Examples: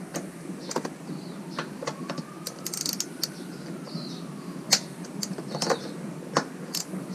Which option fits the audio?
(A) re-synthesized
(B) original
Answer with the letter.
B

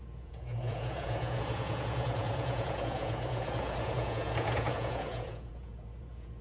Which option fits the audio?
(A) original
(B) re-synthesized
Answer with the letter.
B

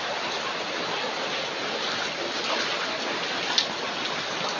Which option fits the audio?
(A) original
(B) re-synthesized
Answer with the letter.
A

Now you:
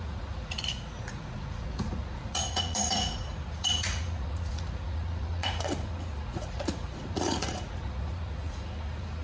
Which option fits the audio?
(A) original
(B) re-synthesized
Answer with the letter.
B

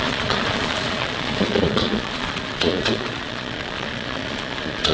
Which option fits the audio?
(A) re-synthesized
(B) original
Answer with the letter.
A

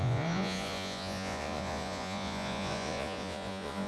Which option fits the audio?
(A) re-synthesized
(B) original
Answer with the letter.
A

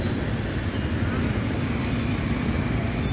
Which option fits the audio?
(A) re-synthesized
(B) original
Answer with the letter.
B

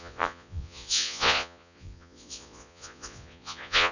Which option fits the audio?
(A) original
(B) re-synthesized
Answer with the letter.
B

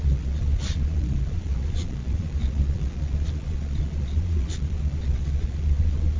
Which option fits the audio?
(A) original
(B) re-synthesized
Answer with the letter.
B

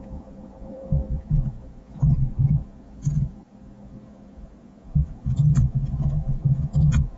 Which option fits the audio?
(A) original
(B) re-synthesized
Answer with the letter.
B